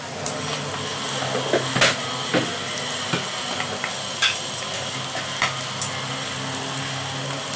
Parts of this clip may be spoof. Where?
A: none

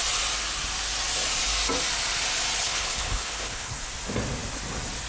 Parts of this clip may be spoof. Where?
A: 2.6-3.8 (codec, HILCodec)

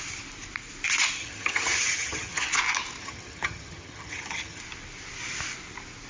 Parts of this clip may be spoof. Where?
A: 1.2-2.5 (vocoder, HiFi-GAN); 3.0-4.6

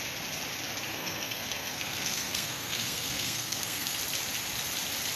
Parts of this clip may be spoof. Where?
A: 0.9-4.0 (codec, SNAC)

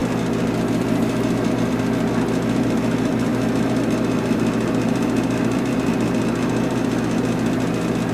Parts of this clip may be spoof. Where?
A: 3.3-7.0 (vocoder, BigVGAN v2)

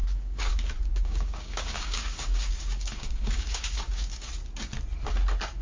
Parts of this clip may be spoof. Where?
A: 0.0-0.5 (codec, DAC); 0.9-4.3

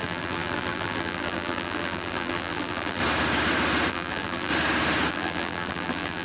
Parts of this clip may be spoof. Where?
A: 0.0-3.0 (vocoder, BigVGAN v2); 3.9-4.5; 5.1-6.2